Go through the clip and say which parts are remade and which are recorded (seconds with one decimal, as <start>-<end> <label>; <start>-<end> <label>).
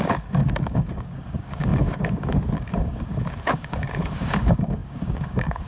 0.0-5.7 remade